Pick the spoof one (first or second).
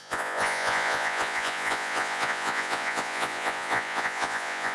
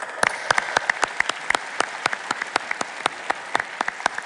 first